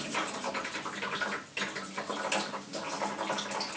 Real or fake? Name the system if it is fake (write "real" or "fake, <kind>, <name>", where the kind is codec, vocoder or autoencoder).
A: real